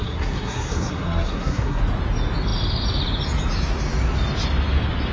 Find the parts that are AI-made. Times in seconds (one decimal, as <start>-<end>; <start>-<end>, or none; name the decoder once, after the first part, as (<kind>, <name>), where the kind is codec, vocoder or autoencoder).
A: 0.0-1.8 (codec, SNAC)